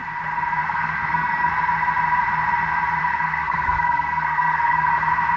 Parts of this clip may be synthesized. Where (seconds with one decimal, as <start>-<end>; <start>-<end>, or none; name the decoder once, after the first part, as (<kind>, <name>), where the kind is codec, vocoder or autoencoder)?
0.6-1.5 (codec, SNAC); 3.0-4.9